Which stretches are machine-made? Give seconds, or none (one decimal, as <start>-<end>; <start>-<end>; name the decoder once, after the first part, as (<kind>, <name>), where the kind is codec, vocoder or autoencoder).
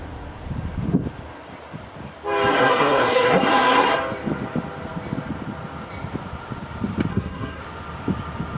2.5-4.0 (codec, SNAC); 7.1-7.6